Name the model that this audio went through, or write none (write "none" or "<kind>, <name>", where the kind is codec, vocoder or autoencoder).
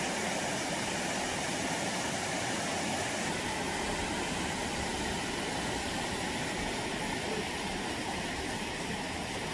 none